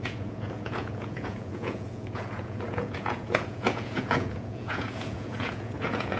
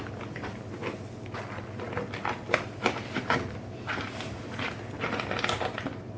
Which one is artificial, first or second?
first